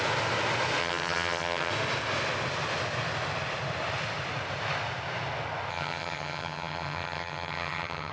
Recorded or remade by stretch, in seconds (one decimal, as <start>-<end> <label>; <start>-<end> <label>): 0.0-0.8 recorded; 0.8-1.7 remade; 1.7-5.7 recorded; 5.7-8.1 remade